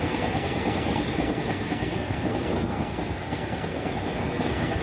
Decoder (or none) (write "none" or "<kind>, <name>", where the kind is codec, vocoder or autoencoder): codec, SNAC